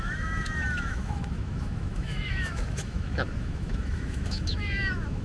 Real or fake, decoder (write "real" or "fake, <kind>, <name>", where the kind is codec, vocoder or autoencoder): fake, autoencoder, DAC-VAE